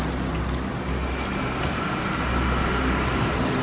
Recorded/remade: recorded